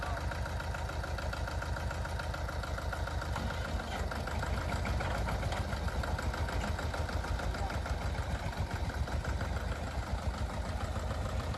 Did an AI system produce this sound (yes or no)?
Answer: no